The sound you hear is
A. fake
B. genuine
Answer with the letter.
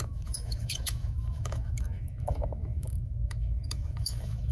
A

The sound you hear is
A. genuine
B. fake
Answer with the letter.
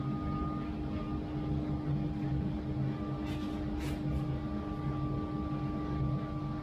A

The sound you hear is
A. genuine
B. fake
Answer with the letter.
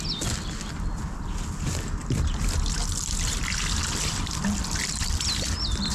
A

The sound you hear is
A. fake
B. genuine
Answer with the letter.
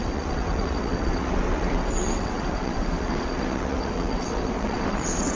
A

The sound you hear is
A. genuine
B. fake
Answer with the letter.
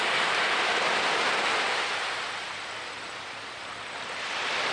B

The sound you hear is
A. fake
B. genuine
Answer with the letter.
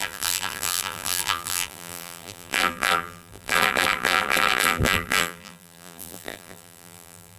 A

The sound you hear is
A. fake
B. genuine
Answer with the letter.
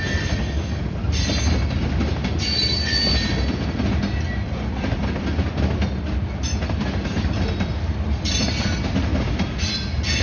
B